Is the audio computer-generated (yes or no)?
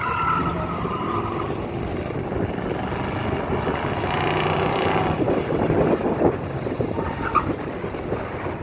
no